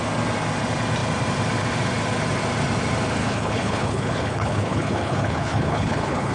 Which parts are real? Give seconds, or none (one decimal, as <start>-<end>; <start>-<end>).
0.0-3.2